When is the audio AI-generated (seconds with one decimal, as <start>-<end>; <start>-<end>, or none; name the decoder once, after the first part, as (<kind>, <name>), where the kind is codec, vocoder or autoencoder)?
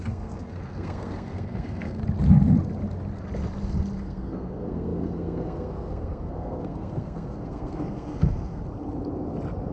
0.0-2.0 (codec, SNAC); 4.0-8.6